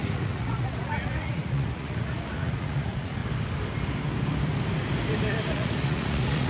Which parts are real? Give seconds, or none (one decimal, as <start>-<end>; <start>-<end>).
3.2-5.5